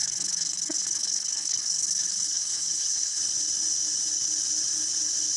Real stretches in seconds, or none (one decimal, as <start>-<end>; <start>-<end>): 3.2-5.4